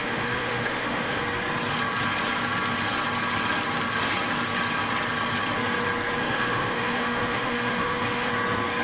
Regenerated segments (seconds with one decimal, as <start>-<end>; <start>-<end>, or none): 0.0-1.2; 6.2-8.3